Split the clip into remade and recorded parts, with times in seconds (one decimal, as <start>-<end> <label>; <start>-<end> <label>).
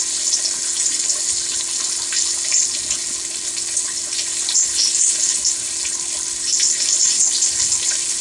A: 0.0-8.2 recorded